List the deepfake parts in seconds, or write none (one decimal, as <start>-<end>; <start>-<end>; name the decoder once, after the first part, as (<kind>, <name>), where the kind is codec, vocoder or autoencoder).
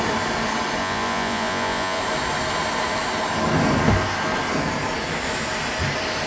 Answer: 0.8-2.0 (vocoder, Vocos)